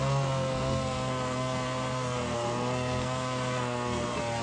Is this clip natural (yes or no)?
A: no